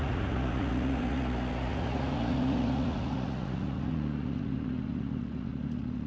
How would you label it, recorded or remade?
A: remade